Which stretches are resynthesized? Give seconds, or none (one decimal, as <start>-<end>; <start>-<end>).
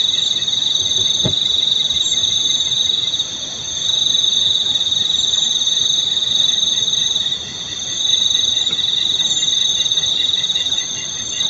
2.2-4.7